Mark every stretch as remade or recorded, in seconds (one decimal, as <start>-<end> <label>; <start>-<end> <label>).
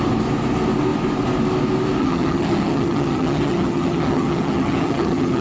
0.0-2.0 recorded; 2.0-5.4 remade